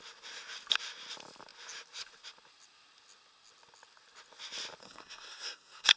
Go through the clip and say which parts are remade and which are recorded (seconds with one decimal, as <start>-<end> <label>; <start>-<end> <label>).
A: 0.0-4.8 recorded; 4.8-6.0 remade